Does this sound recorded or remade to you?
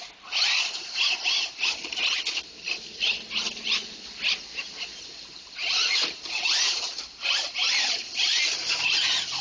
recorded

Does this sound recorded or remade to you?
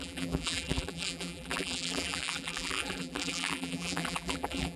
remade